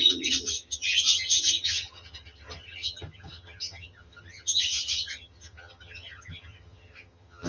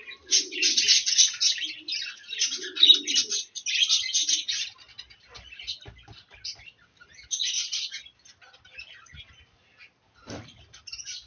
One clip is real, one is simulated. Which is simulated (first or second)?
first